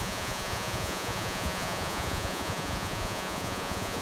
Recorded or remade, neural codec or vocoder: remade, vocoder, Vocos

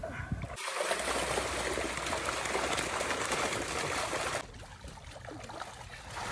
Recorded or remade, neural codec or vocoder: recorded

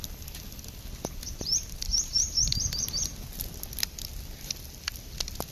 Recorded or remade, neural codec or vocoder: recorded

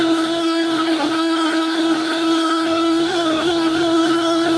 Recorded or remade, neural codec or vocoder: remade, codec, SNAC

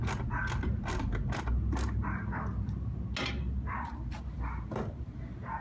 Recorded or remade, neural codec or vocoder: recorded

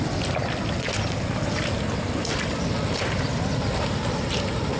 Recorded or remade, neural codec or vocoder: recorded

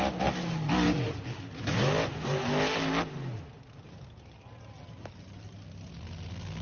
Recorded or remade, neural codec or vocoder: recorded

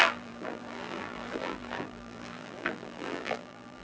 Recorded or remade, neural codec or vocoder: remade, vocoder, BigVGAN v2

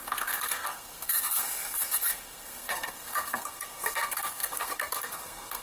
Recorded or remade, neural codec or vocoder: remade, codec, SNAC